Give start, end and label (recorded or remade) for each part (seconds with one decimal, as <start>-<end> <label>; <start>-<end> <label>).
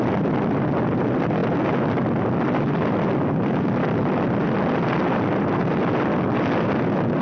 0.0-7.2 recorded